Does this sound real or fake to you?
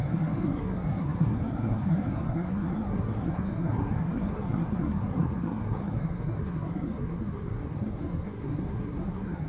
fake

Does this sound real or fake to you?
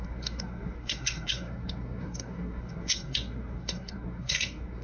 fake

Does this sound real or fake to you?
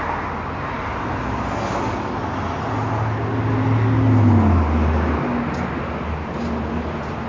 real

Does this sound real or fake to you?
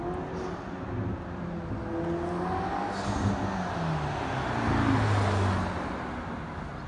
real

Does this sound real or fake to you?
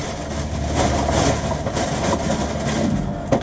real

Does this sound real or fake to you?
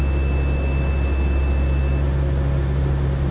real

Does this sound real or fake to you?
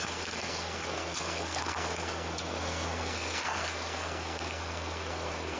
fake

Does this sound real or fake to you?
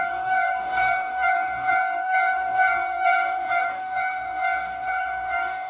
fake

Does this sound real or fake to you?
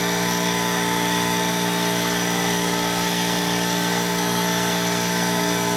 fake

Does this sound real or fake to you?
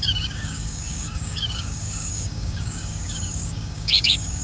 fake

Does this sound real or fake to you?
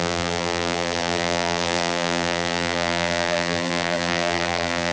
fake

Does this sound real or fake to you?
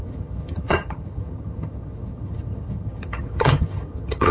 fake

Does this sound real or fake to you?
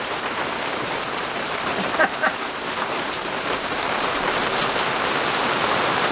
fake